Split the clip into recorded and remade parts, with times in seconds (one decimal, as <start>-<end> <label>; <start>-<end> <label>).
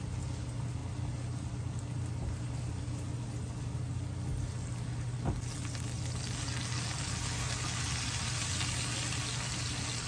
0.0-10.1 recorded